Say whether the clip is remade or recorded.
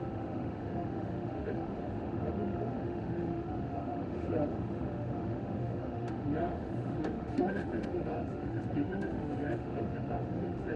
remade